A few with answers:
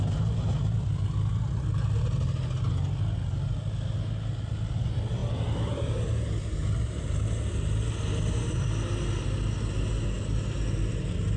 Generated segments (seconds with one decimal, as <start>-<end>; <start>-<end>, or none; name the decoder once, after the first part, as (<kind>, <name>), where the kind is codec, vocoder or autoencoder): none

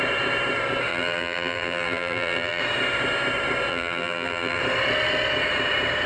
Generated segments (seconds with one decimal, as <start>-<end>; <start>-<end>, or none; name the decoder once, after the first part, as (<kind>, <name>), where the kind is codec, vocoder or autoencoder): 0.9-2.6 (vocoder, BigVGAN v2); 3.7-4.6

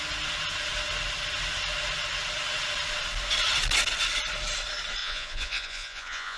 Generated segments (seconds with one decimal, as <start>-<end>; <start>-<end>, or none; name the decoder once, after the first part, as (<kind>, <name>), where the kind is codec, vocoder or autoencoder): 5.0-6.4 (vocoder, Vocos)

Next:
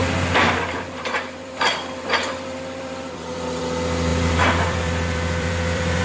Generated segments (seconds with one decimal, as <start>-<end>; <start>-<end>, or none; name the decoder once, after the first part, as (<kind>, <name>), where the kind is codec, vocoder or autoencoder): 0.0-3.6 (vocoder, BigVGAN v2); 4.1-6.0

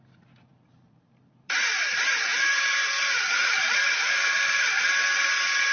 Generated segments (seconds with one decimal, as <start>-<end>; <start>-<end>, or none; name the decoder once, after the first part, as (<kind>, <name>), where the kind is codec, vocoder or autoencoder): 0.5-3.9 (vocoder, BigVGAN v2)

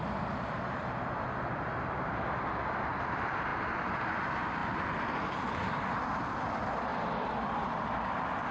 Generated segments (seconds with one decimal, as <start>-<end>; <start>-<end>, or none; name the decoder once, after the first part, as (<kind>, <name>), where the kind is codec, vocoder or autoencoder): 4.6-6.2 (vocoder, BigVGAN v2); 6.9-8.5

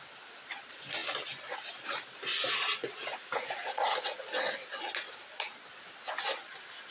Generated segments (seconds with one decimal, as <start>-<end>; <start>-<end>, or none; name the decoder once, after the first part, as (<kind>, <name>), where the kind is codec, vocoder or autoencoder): 2.8-4.0 (vocoder, Vocos)